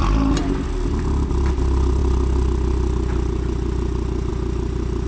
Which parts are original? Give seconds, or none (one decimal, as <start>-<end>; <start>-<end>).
0.0-5.1